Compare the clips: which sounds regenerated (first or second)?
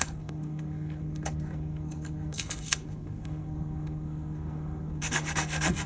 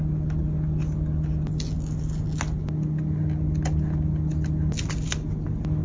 first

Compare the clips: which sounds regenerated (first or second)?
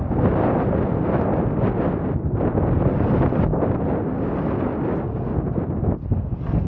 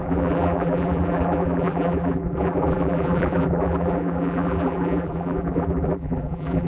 second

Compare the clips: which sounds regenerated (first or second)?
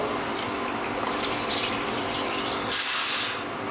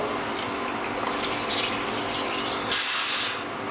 first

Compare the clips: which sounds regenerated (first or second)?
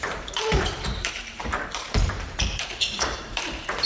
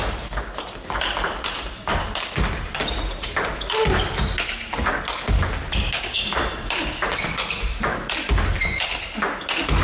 first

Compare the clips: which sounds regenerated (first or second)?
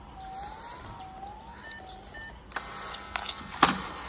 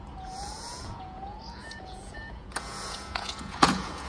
second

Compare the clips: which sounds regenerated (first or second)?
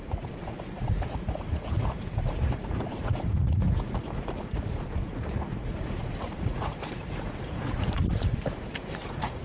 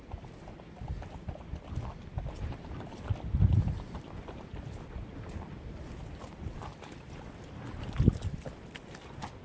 first